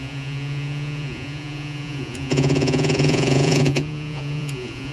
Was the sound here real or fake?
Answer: fake